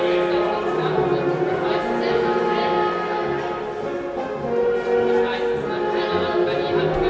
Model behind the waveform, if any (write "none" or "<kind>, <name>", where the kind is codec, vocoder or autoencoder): none